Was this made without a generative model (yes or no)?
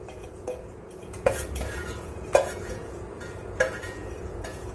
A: no